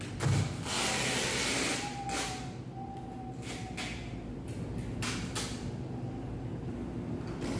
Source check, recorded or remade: recorded